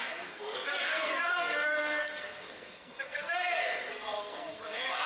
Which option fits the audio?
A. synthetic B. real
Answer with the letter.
A